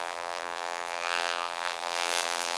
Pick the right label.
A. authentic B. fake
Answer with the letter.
B